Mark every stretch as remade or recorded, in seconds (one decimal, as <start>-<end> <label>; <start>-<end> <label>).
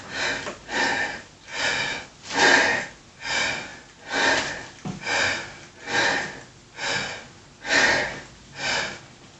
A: 0.0-9.4 recorded